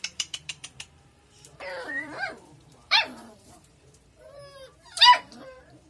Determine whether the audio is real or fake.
fake